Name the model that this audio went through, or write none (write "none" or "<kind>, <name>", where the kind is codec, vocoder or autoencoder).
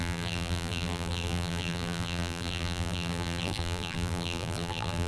vocoder, BigVGAN v2